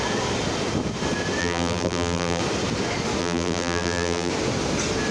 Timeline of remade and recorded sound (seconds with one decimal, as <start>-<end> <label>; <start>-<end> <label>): 0.0-1.4 recorded; 1.4-2.4 remade; 2.4-3.2 recorded; 3.2-4.3 remade; 4.3-5.1 recorded